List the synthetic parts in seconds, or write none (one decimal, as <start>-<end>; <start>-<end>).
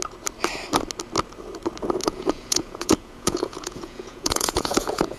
2.0-5.2